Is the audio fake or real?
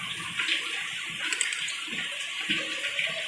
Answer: real